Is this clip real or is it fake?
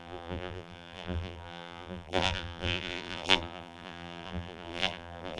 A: fake